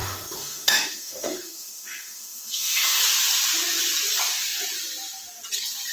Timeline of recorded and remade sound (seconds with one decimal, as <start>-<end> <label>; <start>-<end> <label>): 0.0-3.0 remade; 3.0-5.9 recorded